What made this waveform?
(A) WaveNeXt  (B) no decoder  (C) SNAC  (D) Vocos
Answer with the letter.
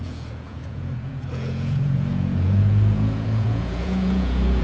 D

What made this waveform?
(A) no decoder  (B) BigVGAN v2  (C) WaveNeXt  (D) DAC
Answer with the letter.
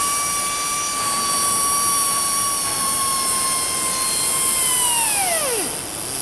A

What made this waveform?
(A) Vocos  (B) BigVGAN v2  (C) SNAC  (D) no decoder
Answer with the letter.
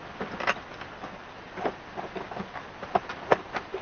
B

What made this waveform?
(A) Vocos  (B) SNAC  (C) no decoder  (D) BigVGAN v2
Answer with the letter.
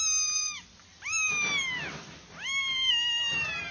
C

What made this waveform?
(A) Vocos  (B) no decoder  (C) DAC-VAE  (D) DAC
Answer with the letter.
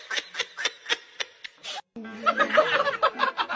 B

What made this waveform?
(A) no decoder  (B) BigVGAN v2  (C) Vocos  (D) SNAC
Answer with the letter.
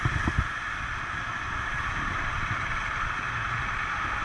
A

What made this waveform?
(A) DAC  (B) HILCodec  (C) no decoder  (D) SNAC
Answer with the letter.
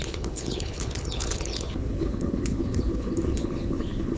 B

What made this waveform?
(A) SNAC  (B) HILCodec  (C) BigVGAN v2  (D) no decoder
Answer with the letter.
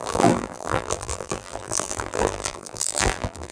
C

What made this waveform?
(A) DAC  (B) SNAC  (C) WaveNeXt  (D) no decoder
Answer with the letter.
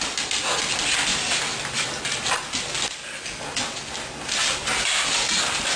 D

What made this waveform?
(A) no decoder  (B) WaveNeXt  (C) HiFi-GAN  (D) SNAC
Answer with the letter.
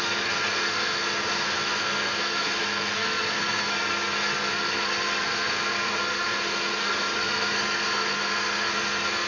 D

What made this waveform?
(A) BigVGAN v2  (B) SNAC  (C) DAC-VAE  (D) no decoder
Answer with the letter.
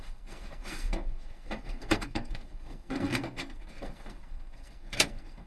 B